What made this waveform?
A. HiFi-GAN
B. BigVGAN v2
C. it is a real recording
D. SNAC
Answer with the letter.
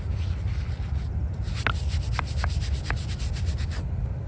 C